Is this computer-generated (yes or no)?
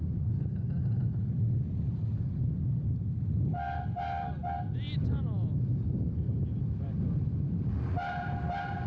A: no